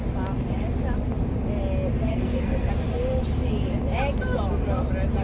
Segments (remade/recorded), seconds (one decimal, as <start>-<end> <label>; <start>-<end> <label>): 0.0-2.1 recorded; 2.1-2.7 remade; 2.7-5.2 recorded